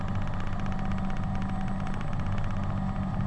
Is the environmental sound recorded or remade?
recorded